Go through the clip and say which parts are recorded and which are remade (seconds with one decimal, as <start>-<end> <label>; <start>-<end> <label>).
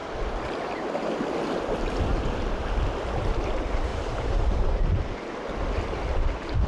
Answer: 0.0-3.9 recorded; 3.9-5.2 remade; 5.2-6.7 recorded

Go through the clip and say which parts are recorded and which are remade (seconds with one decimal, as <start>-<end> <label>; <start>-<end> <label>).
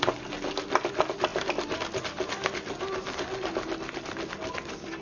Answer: 0.0-5.0 recorded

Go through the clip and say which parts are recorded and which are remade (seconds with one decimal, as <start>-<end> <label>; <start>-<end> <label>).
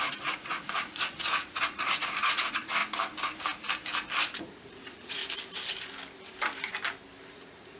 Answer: 0.0-2.8 remade; 2.8-4.4 recorded; 4.4-5.2 remade; 5.2-7.3 recorded; 7.3-7.8 remade